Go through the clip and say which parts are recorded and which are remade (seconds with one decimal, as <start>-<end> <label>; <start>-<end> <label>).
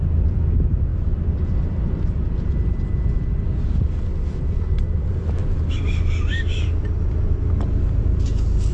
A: 0.0-8.7 recorded